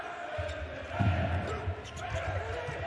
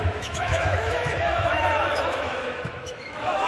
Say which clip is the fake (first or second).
second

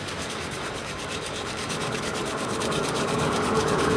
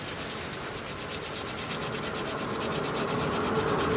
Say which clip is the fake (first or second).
first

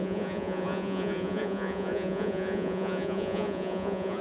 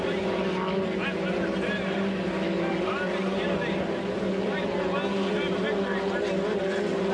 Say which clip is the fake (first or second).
first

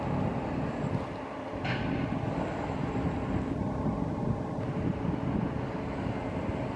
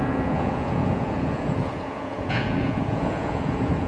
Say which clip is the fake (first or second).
second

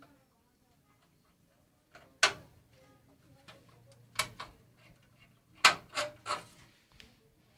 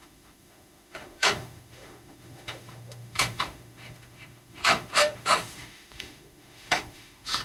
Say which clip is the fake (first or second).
second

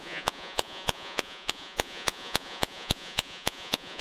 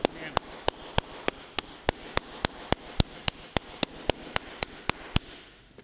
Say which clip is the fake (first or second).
first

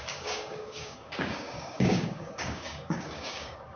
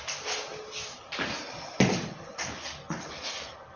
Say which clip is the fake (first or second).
first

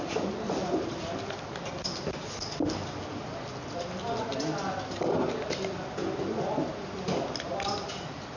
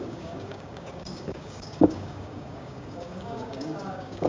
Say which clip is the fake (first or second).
second